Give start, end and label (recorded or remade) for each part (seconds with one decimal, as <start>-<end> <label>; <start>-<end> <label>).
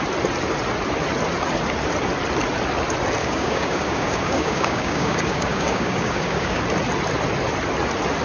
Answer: 0.0-3.2 recorded; 3.2-6.6 remade; 6.6-8.2 recorded